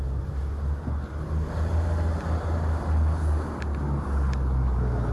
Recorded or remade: recorded